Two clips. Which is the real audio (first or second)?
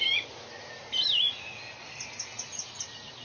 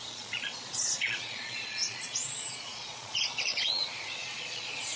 first